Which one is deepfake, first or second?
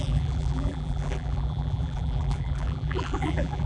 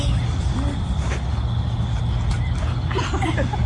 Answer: first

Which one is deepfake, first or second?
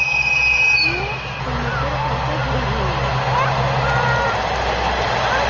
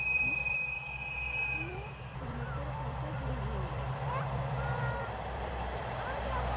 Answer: second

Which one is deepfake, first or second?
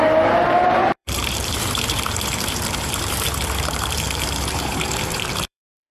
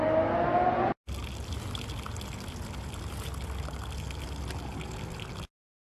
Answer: first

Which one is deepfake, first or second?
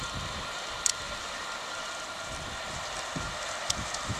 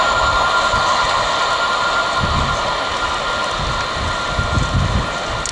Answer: first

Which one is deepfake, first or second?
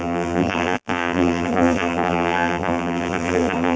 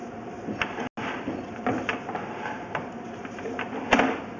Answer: first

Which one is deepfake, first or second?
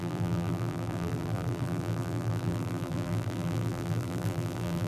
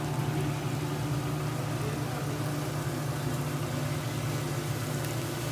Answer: first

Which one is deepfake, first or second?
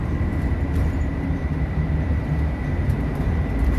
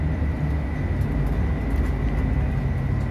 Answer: first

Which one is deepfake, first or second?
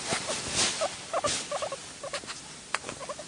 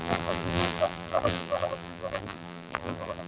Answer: second